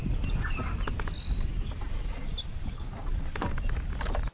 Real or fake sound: real